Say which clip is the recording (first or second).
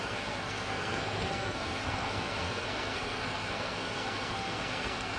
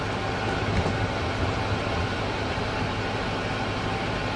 second